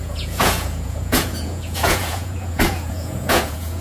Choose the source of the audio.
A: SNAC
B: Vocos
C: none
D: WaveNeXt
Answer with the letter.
B